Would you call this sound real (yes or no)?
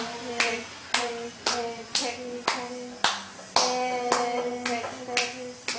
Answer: yes